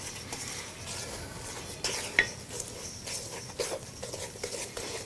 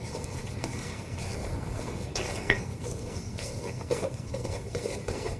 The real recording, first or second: first